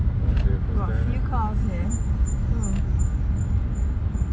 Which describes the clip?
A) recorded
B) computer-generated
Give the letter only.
A